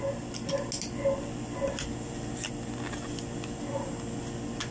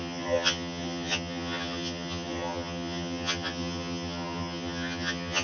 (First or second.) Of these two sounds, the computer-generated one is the second